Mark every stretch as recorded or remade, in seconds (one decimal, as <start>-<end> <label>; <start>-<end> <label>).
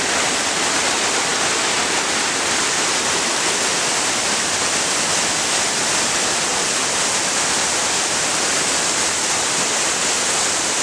0.0-10.8 recorded